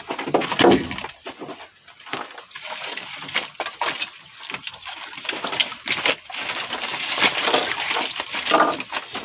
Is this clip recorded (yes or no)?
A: yes